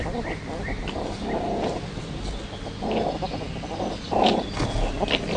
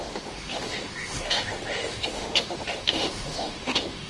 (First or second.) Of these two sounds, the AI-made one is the second